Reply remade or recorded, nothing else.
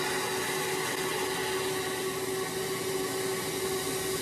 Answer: recorded